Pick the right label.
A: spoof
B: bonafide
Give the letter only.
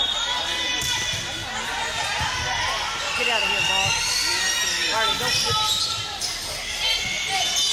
B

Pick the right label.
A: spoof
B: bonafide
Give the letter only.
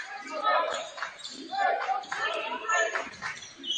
A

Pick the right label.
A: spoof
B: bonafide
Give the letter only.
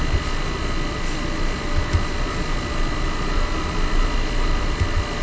B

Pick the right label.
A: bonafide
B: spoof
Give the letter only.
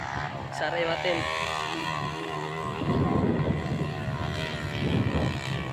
A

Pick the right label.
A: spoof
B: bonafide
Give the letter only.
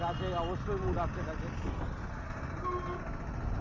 B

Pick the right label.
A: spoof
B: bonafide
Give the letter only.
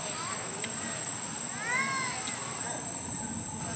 B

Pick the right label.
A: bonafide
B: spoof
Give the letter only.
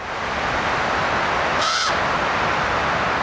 A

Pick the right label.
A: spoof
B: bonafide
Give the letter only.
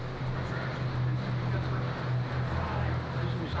B